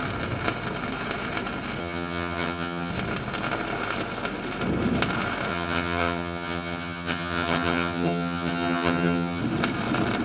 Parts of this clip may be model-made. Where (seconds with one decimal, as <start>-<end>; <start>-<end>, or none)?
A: 1.8-2.9; 5.5-9.4